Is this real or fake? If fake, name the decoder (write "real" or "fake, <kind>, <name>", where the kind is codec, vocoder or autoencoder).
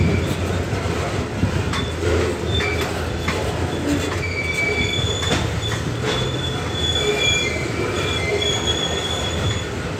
real